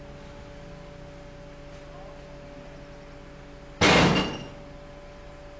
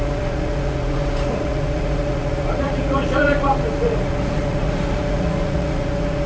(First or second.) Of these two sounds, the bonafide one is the first